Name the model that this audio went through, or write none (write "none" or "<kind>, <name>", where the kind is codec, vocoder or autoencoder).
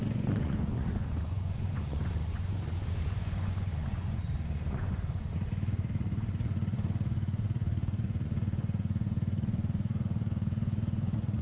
vocoder, Vocos